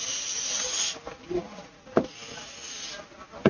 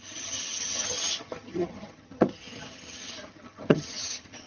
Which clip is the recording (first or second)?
first